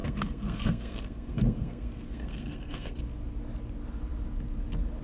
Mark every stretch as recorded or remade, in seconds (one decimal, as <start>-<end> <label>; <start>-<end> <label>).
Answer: 0.0-3.0 remade; 3.0-5.0 recorded